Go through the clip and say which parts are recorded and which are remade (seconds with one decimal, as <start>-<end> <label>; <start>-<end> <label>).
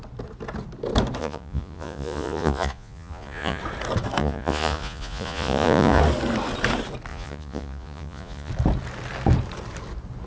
0.0-1.2 recorded; 1.2-3.6 remade; 3.6-4.2 recorded; 4.2-6.0 remade; 6.0-7.1 recorded; 7.1-8.5 remade; 8.5-10.3 recorded